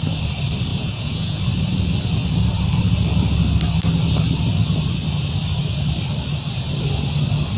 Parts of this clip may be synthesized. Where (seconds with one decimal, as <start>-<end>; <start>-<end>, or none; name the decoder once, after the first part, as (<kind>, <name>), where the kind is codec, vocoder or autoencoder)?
0.7-1.4 (vocoder, Vocos)